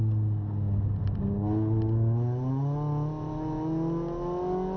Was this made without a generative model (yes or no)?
yes